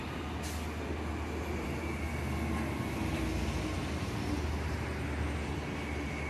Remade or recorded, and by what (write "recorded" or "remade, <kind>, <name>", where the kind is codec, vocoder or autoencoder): recorded